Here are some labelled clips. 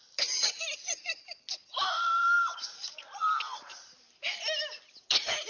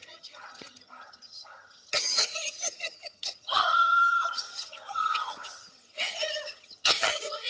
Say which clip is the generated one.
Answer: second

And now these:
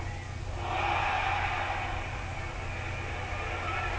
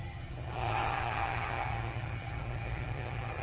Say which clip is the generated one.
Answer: second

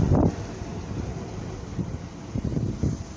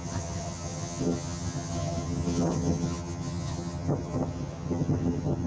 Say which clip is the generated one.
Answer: second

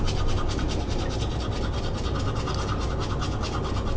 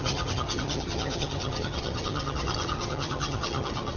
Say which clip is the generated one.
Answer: second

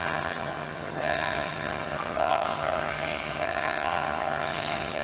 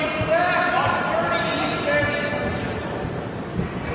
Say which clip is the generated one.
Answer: first